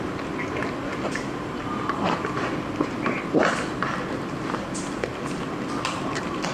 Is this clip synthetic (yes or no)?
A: no